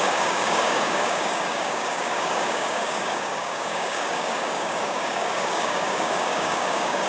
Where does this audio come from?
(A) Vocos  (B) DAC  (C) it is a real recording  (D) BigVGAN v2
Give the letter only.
B